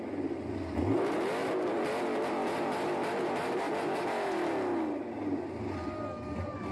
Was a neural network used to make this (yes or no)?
no